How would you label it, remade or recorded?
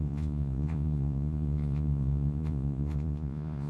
remade